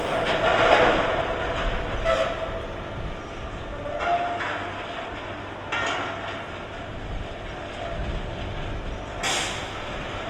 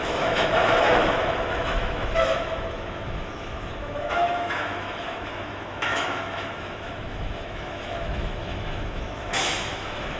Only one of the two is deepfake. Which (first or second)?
second